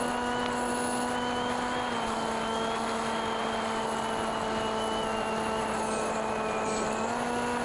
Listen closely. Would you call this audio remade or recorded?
recorded